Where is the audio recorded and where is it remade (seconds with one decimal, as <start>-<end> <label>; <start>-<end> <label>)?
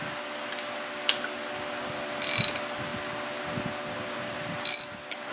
0.0-5.3 recorded